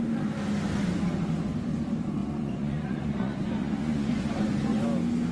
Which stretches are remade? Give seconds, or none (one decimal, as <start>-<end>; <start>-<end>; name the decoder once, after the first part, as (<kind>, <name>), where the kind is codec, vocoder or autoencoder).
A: 2.2-4.8 (vocoder, Vocos)